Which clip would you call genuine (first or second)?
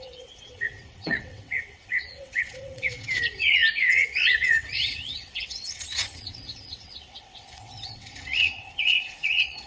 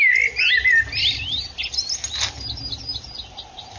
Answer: second